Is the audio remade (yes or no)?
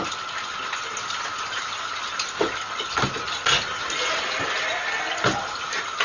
no